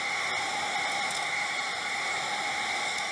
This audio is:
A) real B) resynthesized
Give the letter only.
A